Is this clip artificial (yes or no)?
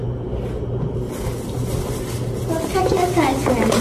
no